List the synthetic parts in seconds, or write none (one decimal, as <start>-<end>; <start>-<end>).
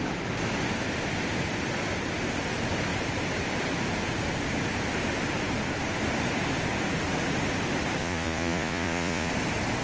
8.0-9.3